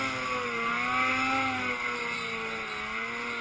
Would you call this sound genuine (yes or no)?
yes